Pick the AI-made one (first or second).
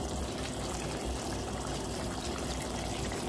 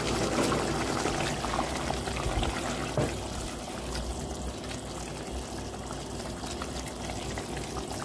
first